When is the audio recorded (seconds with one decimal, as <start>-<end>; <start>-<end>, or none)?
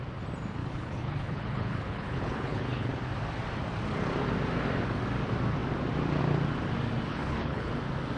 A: 0.0-0.6; 2.9-7.1; 7.7-8.2